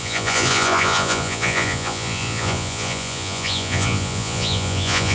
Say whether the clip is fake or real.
fake